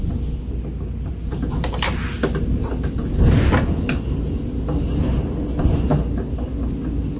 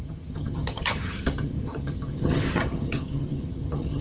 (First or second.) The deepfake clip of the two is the second